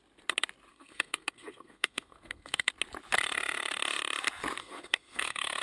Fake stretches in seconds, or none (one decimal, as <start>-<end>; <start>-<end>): 0.7-2.7; 4.6-5.6